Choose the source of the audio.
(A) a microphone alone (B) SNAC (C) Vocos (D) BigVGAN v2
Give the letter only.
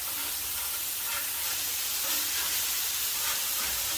D